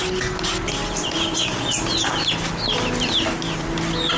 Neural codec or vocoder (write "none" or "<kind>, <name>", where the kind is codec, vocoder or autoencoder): none